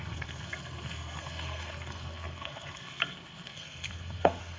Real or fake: fake